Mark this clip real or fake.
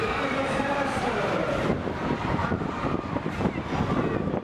fake